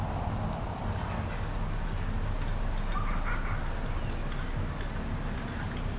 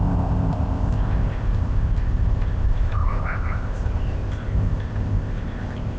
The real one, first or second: first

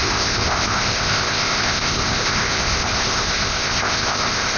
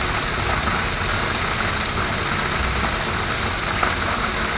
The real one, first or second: second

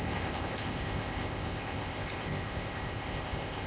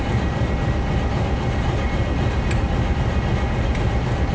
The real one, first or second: second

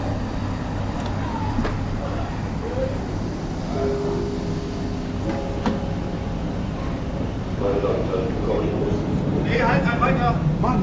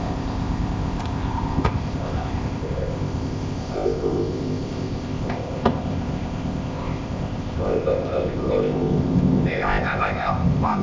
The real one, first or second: first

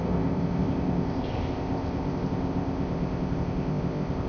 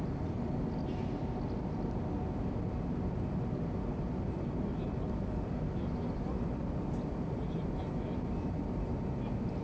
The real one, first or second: second